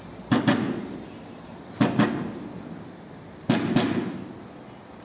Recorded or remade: recorded